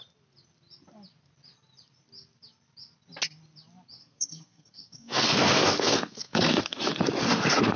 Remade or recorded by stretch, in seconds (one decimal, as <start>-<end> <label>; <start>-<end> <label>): 0.0-4.0 recorded; 4.0-6.8 remade; 6.8-7.2 recorded; 7.2-7.8 remade